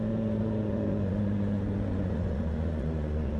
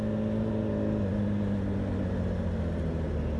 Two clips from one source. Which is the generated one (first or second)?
first